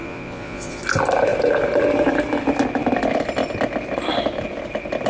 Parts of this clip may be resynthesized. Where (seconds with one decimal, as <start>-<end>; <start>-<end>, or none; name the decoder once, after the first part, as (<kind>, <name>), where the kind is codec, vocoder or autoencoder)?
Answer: 0.0-0.8 (vocoder, Vocos)